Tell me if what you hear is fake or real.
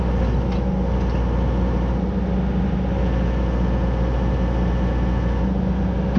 real